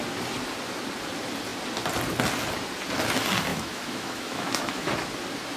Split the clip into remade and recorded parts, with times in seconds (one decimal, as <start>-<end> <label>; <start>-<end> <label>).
0.0-3.5 recorded; 3.5-4.9 remade; 4.9-5.6 recorded